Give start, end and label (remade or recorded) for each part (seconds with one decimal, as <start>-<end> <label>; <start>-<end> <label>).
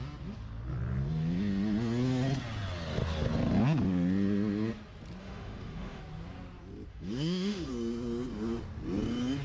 0.0-5.2 recorded; 5.2-6.0 remade; 6.0-6.9 recorded; 6.9-7.7 remade; 7.7-9.4 recorded